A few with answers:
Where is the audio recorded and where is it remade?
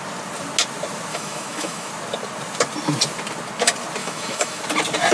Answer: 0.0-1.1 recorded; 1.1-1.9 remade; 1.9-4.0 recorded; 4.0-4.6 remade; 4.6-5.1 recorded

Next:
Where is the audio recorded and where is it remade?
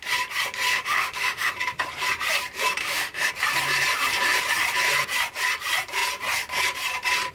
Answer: 0.0-0.7 recorded; 0.7-1.5 remade; 1.5-2.8 recorded; 2.8-3.3 remade; 3.3-7.3 recorded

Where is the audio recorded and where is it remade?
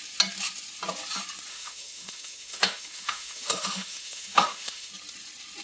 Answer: 0.0-1.5 recorded; 1.5-4.9 remade; 4.9-5.6 recorded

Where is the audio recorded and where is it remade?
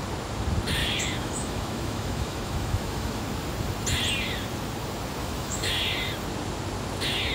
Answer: 0.0-0.8 recorded; 0.8-3.2 remade; 3.2-5.2 recorded; 5.2-5.7 remade; 5.7-7.3 recorded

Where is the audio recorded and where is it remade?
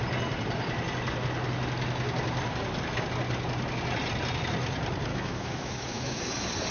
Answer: 0.0-5.1 recorded; 5.1-6.2 remade; 6.2-6.7 recorded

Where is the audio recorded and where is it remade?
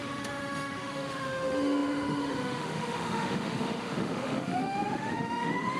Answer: 0.0-5.8 remade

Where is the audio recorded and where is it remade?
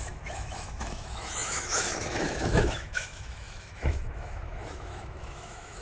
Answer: 0.0-5.8 remade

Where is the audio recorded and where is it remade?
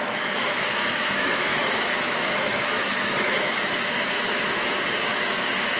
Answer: 0.0-5.8 remade